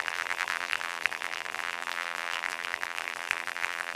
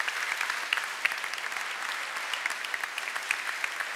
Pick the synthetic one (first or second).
first